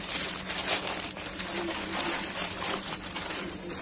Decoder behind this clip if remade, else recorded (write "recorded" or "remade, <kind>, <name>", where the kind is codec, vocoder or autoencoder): remade, vocoder, BigVGAN v2